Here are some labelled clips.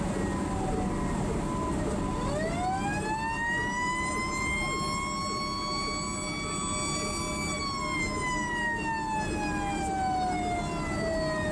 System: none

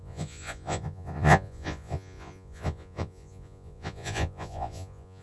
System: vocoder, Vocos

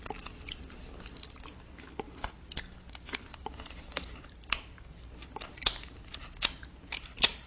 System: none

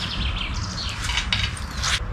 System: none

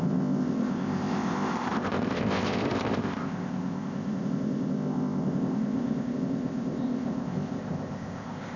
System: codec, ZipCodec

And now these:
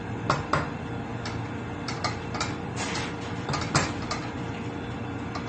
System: vocoder, BigVGAN v2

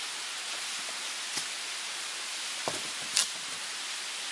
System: none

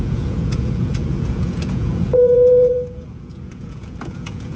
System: vocoder, Vocos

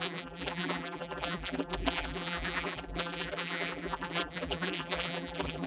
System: vocoder, BigVGAN v2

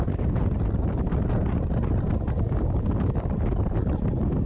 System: none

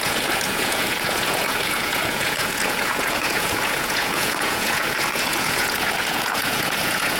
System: vocoder, Vocos